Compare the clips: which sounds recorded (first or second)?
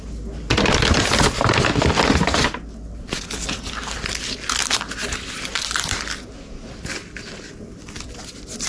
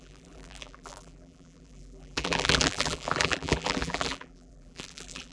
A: first